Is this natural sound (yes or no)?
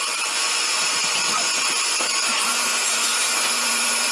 no